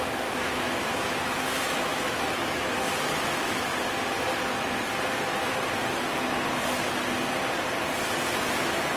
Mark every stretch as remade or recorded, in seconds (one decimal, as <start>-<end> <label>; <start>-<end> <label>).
0.0-3.7 remade; 3.7-8.4 recorded; 8.4-9.0 remade